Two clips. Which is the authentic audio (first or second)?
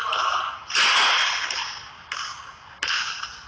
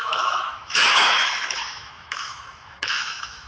first